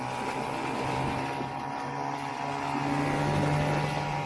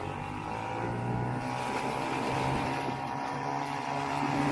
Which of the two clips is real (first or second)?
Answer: first